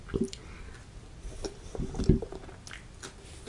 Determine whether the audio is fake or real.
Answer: real